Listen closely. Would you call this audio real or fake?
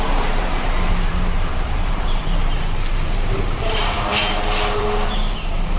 fake